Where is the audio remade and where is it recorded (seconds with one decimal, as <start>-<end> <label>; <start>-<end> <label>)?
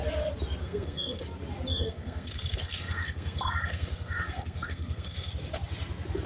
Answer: 0.0-0.6 recorded; 0.6-1.2 remade; 1.2-1.7 recorded; 1.7-5.3 remade; 5.3-6.3 recorded